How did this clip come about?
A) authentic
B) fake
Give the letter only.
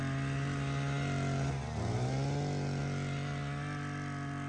A